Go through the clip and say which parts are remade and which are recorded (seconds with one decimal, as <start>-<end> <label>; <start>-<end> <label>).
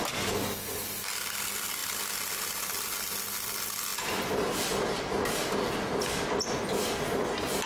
0.0-7.7 recorded